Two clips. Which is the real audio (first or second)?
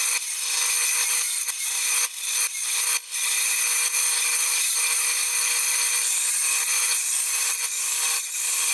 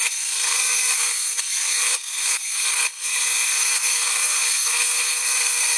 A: first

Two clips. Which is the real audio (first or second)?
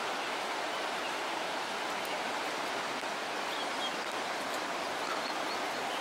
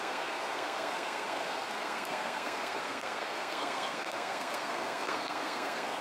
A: first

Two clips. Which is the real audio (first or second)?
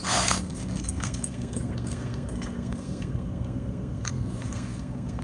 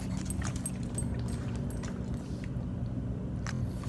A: second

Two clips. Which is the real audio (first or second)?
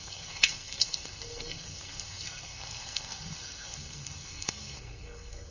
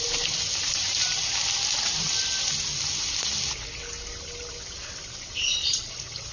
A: second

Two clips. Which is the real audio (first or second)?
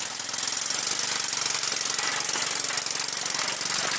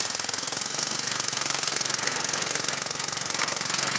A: first